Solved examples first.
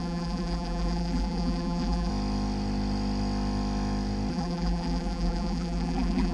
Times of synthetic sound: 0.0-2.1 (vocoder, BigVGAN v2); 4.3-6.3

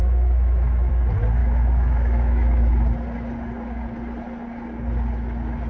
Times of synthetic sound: 0.0-0.9 (autoencoder, DAC-VAE); 1.4-2.7

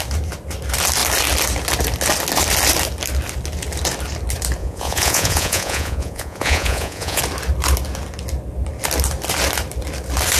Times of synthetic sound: 4.6-7.2 (vocoder, Vocos)